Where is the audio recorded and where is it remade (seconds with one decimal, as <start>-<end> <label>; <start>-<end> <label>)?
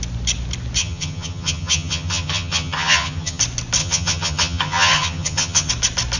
0.0-0.8 recorded; 0.8-3.4 remade; 3.4-3.8 recorded; 3.8-5.7 remade; 5.7-6.2 recorded